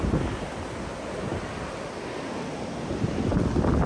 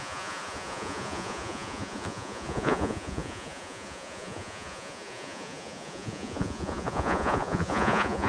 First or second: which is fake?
second